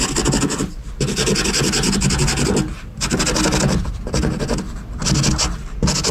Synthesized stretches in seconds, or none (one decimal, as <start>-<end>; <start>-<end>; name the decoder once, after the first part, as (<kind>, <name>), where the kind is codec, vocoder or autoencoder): none